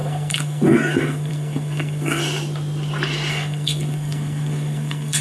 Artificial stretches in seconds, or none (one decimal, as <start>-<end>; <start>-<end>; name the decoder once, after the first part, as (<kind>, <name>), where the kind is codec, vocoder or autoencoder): 0.0-2.2 (codec, SNAC); 3.3-5.2